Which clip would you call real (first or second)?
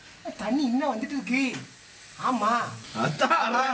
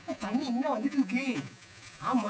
first